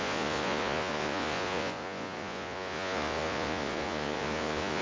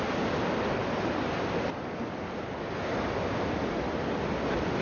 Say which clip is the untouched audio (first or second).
second